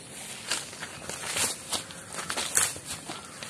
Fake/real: real